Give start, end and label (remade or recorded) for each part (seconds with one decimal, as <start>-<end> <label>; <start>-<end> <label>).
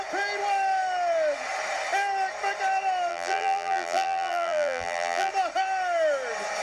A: 0.0-3.1 recorded; 3.1-5.3 remade; 5.3-6.6 recorded